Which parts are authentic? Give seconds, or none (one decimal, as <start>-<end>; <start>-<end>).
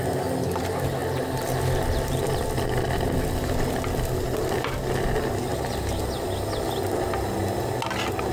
0.0-8.3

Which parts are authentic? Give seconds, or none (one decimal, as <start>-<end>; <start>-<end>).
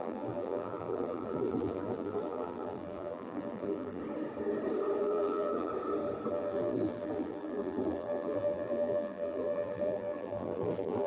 4.0-5.0; 5.7-6.3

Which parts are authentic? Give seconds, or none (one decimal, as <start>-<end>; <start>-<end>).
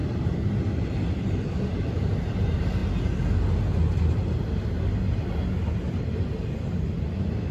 2.8-6.0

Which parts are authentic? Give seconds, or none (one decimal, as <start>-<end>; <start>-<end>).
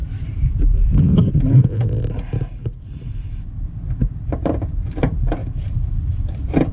1.3-2.6; 4.9-5.4; 6.3-6.7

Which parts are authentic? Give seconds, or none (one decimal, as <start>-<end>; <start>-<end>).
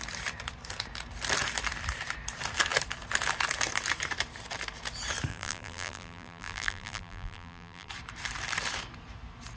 0.0-5.3; 7.9-9.6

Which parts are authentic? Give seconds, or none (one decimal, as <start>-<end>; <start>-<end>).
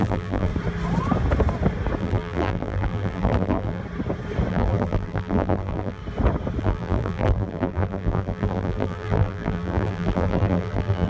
0.5-2.0; 3.8-4.5; 6.0-6.6